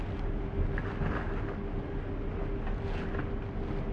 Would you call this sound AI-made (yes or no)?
no